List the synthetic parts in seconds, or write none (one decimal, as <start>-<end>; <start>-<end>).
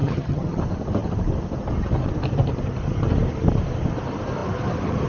0.0-0.6